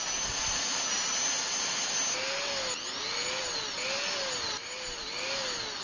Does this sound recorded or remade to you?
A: recorded